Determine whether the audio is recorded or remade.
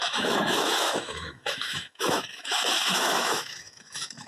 remade